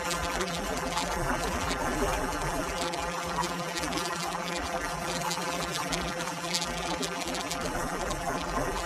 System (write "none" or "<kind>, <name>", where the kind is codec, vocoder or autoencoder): vocoder, BigVGAN v2